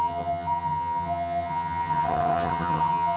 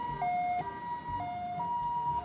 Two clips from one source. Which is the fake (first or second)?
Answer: first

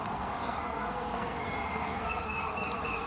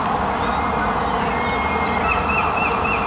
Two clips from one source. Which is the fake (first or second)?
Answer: first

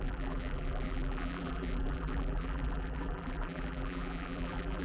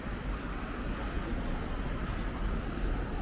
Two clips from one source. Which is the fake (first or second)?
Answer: first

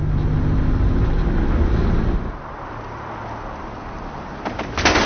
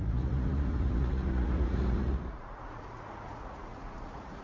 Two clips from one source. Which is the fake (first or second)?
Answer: second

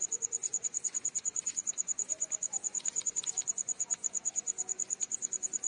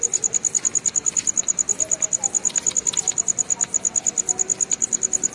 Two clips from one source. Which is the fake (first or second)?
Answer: first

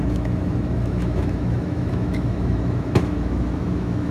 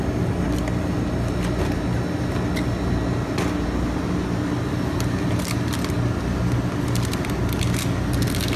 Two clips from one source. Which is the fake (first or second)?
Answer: first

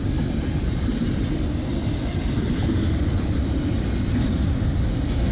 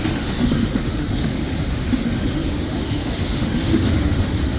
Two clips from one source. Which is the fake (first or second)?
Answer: second